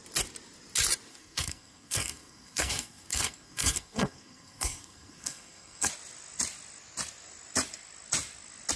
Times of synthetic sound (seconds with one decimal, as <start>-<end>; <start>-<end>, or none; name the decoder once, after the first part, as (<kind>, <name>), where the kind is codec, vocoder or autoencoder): 1.1-5.9 (codec, SNAC)